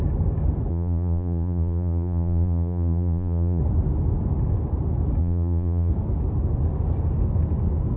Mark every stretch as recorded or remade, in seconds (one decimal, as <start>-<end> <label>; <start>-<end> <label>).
0.0-0.7 recorded; 0.7-3.6 remade; 3.6-5.2 recorded; 5.2-5.9 remade; 5.9-8.0 recorded